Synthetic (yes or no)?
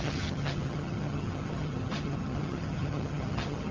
yes